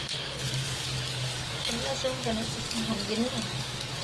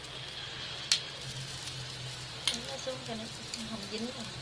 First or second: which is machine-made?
first